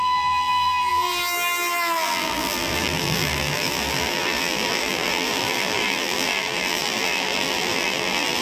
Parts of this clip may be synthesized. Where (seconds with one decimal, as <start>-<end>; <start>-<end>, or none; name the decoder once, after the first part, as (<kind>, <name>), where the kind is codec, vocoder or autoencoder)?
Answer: 0.0-8.4 (vocoder, BigVGAN v2)